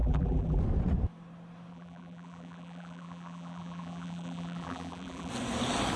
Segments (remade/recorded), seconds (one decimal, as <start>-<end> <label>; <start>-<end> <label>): 0.0-0.6 remade; 0.6-1.7 recorded; 1.7-5.3 remade; 5.3-6.0 recorded